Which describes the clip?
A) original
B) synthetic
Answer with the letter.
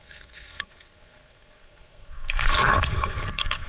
B